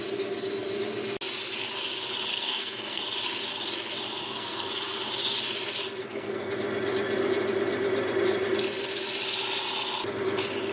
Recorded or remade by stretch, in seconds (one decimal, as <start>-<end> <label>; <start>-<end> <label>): 0.0-2.3 recorded; 2.3-3.0 remade; 3.0-4.2 recorded; 4.2-4.7 remade; 4.7-6.0 recorded; 6.0-6.5 remade; 6.5-10.7 recorded